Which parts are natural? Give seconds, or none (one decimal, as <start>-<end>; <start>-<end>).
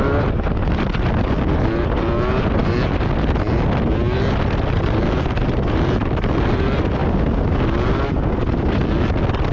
0.0-9.5